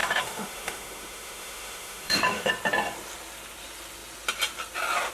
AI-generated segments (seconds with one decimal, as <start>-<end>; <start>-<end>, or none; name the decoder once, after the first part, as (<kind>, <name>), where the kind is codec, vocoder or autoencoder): 0.0-2.5 (autoencoder, DAC-VAE)